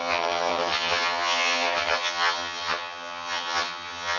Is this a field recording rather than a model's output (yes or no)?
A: no